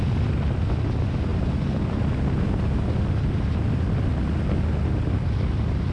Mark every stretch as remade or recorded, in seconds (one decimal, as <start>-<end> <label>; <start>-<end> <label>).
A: 0.0-5.9 recorded